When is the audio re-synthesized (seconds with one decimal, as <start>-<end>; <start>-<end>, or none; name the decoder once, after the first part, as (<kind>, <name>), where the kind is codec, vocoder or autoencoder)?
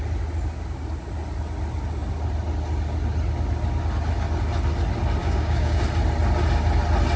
5.2-5.8 (codec, DAC)